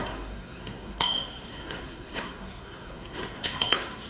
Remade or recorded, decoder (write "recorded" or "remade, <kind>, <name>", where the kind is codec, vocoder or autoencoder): remade, codec, SNAC